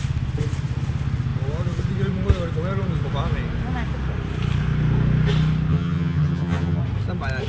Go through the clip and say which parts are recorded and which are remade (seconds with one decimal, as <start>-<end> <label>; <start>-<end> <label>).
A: 0.0-5.7 recorded; 5.7-6.8 remade; 6.8-7.5 recorded